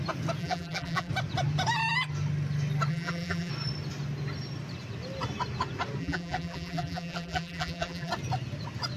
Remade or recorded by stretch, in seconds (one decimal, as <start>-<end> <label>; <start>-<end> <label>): 0.0-0.4 recorded; 0.4-1.1 remade; 1.1-2.9 recorded; 2.9-3.5 remade; 3.5-6.0 recorded; 6.0-8.1 remade; 8.1-9.0 recorded